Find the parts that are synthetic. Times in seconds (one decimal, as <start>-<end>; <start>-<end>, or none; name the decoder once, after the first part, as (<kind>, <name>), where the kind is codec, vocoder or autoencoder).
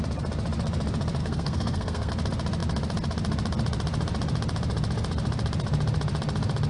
1.2-2.1 (codec, SNAC)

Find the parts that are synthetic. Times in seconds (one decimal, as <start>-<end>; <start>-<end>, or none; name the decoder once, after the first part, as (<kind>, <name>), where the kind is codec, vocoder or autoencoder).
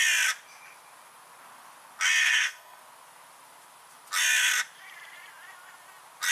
2.2-2.8 (codec, SNAC)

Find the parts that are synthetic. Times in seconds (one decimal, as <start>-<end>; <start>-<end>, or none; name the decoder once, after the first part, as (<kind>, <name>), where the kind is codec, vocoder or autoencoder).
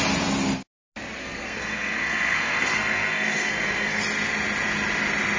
1.2-4.0 (codec, SNAC)